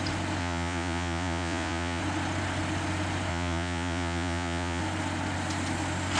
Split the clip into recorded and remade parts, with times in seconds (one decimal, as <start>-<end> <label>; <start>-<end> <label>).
0.0-0.4 recorded; 0.4-2.0 remade; 2.0-3.3 recorded; 3.3-4.8 remade; 4.8-6.2 recorded

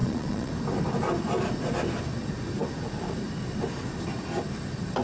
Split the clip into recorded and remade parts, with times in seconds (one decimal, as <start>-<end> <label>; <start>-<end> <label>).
0.0-0.5 remade; 0.5-5.0 recorded

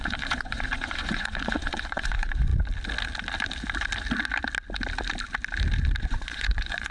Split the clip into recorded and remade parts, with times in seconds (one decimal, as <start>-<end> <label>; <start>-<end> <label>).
0.0-2.5 remade; 2.5-6.0 recorded; 6.0-6.9 remade

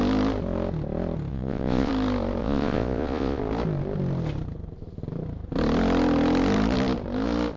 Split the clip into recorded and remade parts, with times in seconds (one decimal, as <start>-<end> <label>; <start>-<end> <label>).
0.0-1.3 recorded; 1.3-1.9 remade; 1.9-2.4 recorded; 2.4-3.4 remade; 3.4-7.6 recorded